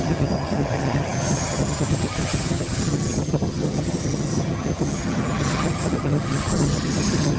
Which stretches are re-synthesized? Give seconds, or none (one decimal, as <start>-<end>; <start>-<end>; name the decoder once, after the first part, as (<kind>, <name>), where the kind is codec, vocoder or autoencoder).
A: 0.0-7.4 (vocoder, HiFi-GAN)